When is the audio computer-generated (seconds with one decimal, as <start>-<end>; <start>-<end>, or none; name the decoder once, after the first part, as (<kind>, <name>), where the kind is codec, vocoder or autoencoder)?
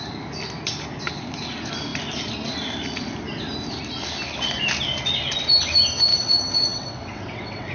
6.1-7.7 (vocoder, WaveNeXt)